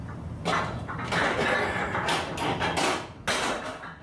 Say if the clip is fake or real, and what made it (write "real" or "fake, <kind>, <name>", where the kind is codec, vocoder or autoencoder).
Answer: real